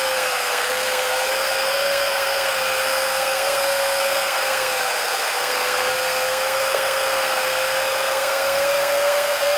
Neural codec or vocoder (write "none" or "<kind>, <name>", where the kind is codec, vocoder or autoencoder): codec, SNAC